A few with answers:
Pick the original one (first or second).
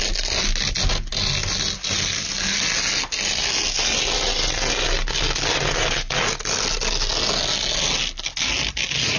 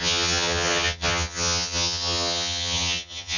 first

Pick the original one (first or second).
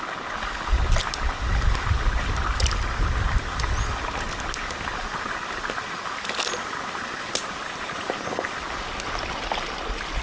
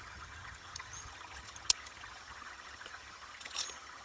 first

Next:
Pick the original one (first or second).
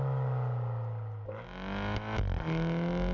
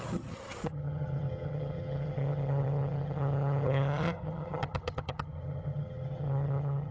first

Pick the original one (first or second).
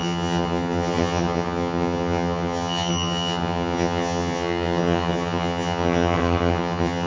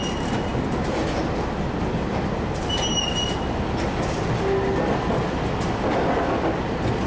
second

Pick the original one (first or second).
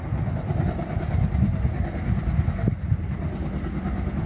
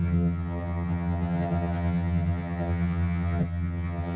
first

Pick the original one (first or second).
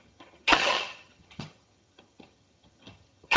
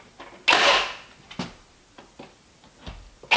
second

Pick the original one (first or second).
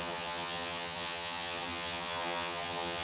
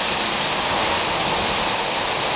second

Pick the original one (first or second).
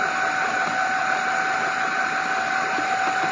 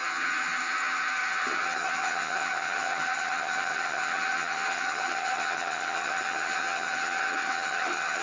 first